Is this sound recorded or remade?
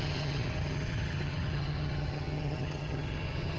remade